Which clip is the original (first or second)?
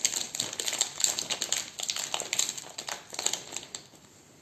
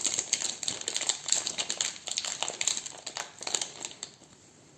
first